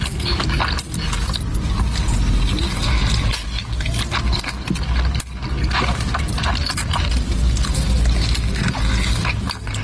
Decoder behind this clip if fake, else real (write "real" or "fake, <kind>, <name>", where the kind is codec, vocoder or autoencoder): real